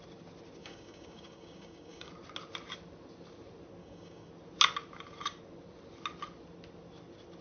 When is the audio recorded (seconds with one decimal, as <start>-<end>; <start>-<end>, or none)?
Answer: 0.0-0.6; 2.1-3.8; 4.3-7.4